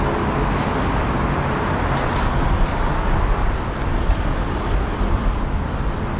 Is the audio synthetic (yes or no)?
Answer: no